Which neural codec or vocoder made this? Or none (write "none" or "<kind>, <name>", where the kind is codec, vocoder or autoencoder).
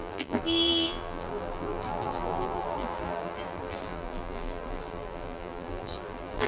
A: vocoder, BigVGAN v2